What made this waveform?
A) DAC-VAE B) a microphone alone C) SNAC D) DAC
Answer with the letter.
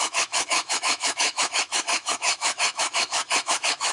A